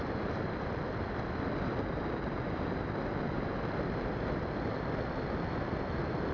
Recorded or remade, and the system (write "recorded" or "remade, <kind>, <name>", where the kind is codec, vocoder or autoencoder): recorded